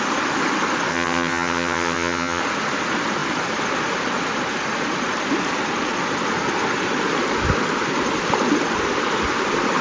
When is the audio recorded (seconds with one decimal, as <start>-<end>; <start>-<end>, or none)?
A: 0.0-0.9; 2.4-9.8